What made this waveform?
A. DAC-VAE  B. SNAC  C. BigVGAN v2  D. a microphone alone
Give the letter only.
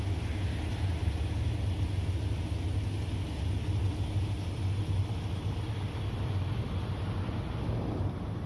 D